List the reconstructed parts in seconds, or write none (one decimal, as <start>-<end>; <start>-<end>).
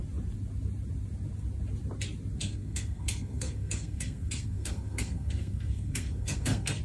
2.4-6.8